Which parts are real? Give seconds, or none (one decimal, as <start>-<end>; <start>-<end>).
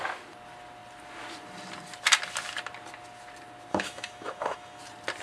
0.0-3.7; 4.8-5.2